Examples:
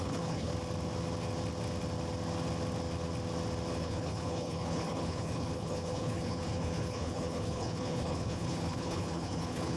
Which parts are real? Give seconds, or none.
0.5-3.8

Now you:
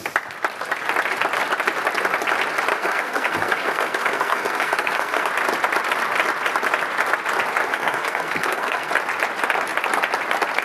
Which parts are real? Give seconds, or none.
0.0-2.7; 5.3-7.7; 8.9-10.6

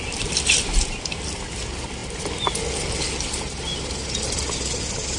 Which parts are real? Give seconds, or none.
0.0-5.2

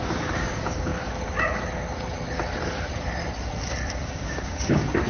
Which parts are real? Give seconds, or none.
0.9-4.0

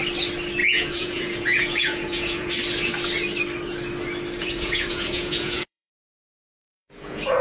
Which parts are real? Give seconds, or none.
0.0-0.6; 2.5-4.4; 5.9-6.6

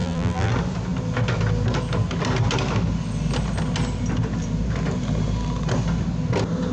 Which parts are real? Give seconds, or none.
0.5-6.7